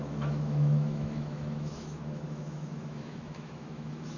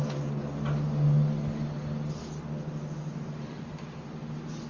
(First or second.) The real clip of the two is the second